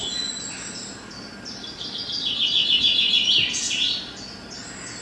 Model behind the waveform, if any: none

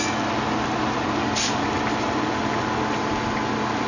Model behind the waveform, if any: none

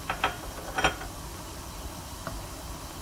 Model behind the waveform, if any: none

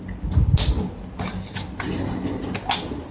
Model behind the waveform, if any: none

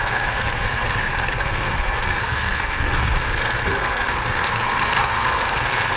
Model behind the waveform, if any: codec, SNAC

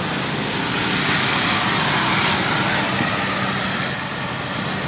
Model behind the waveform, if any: none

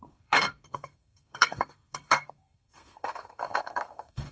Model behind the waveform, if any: codec, SNAC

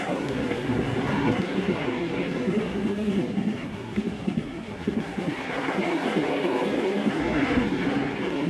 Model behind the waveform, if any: codec, SNAC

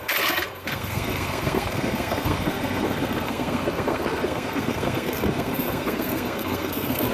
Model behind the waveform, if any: codec, SNAC